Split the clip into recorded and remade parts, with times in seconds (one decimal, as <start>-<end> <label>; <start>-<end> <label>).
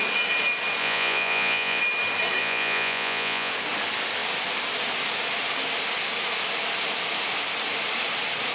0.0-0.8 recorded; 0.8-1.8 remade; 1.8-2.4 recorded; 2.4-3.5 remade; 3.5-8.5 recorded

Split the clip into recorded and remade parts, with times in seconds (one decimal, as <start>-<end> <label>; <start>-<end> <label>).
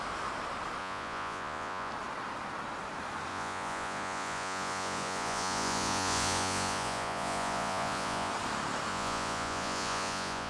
0.0-0.8 recorded; 0.8-1.9 remade; 1.9-3.3 recorded; 3.3-8.3 remade; 8.3-8.9 recorded; 8.9-10.5 remade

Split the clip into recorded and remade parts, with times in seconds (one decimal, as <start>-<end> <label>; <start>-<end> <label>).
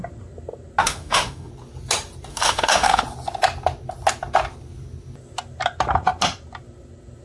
0.0-0.8 recorded; 0.8-1.5 remade; 1.5-2.3 recorded; 2.3-3.0 remade; 3.0-7.2 recorded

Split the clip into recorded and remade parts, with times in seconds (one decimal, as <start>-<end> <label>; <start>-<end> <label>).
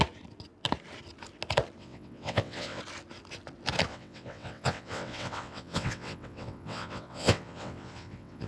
0.0-1.8 recorded; 1.8-2.8 remade; 2.8-3.9 recorded; 3.9-8.5 remade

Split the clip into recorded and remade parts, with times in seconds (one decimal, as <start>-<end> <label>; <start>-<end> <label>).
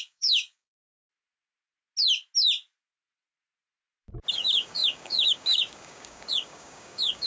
0.0-1.1 remade; 1.1-4.3 recorded; 4.3-7.3 remade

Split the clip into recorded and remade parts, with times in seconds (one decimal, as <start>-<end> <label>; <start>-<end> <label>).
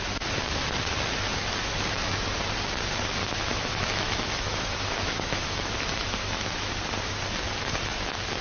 0.0-3.2 recorded; 3.2-6.7 remade; 6.7-8.4 recorded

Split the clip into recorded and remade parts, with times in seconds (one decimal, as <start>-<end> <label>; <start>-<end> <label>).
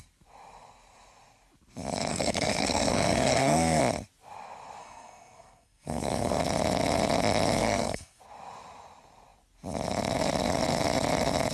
0.0-2.1 recorded; 2.1-3.8 remade; 3.8-4.8 recorded; 4.8-6.4 remade; 6.4-7.6 recorded; 7.6-8.2 remade; 8.2-11.5 recorded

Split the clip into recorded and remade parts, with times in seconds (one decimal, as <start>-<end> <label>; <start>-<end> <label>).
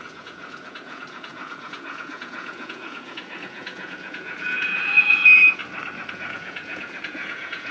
0.0-5.6 remade; 5.6-6.1 recorded; 6.1-7.7 remade